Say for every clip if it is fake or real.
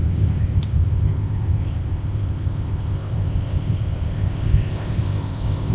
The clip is fake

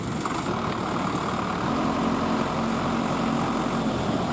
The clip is real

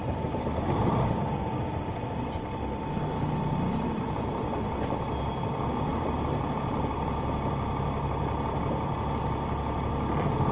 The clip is real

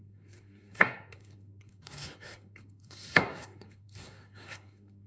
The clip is fake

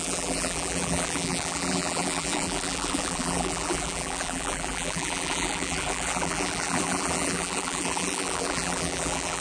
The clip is fake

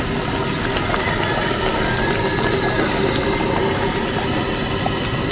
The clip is real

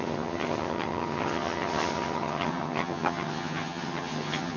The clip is fake